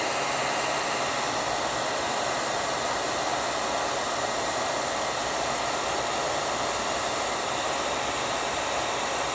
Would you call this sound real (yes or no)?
no